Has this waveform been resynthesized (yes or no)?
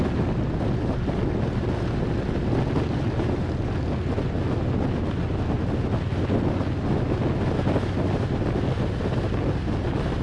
no